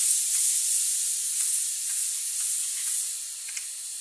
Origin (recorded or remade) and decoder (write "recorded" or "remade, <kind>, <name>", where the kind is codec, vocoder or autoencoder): recorded